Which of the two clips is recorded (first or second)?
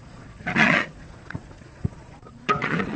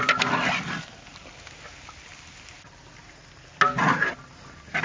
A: second